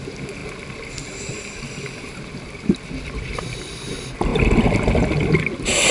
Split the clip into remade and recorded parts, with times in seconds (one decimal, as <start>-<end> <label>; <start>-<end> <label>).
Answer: 0.0-5.9 recorded